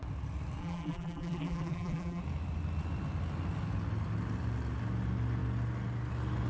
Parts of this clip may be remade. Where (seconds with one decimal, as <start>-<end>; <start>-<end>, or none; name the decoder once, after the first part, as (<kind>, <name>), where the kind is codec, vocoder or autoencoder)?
0.6-2.2 (vocoder, BigVGAN v2)